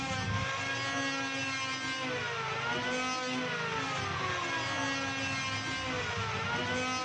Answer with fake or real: real